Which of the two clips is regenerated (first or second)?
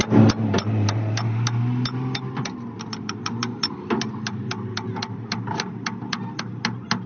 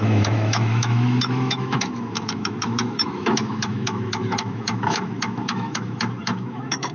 second